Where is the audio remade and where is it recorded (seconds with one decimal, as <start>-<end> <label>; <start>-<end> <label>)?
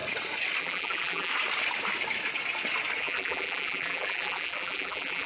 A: 0.0-0.6 recorded; 0.6-1.3 remade; 1.3-3.0 recorded; 3.0-5.3 remade